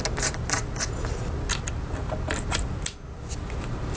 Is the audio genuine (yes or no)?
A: yes